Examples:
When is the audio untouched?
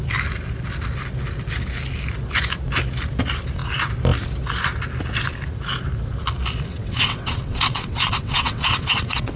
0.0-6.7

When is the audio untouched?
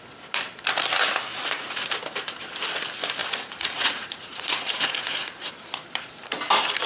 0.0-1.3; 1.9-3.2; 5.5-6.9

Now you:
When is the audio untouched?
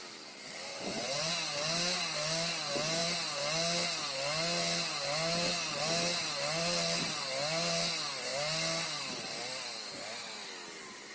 0.0-0.7; 1.3-11.1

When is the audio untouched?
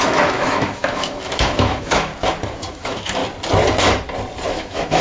2.1-2.7; 3.2-4.5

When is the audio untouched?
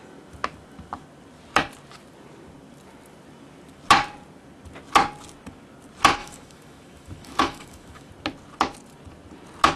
0.0-6.2; 8.1-9.8